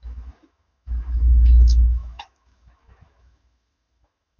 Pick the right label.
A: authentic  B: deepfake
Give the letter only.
B